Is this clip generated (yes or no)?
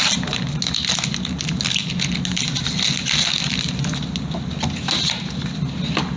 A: no